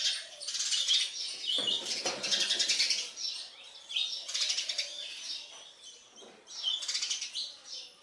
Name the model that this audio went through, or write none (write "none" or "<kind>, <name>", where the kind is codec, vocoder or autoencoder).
none